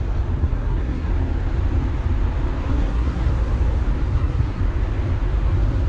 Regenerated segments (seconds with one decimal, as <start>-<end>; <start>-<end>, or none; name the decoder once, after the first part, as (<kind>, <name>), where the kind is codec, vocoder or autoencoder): 0.4-1.1 (codec, SNAC); 2.7-3.3; 4.1-4.6